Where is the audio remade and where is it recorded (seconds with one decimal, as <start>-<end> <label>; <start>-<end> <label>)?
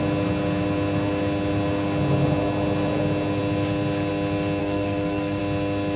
0.0-4.6 recorded; 4.6-5.4 remade; 5.4-6.0 recorded